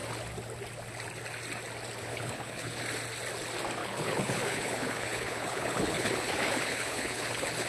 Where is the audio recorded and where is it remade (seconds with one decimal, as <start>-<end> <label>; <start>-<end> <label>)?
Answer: 0.0-2.1 recorded; 2.1-2.8 remade; 2.8-3.8 recorded; 3.8-7.7 remade